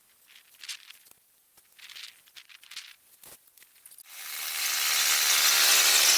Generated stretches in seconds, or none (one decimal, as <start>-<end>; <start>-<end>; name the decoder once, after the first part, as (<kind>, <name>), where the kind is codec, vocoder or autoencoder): 4.1-5.7 (vocoder, BigVGAN v2)